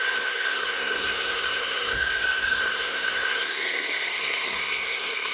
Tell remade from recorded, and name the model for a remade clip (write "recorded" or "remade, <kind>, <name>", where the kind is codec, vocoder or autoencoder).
remade, codec, SNAC